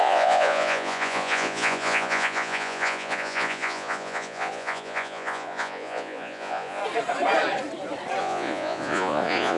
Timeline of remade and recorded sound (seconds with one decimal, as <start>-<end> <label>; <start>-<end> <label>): 0.0-6.8 remade; 6.8-8.2 recorded; 8.2-9.6 remade